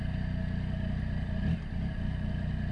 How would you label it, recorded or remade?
recorded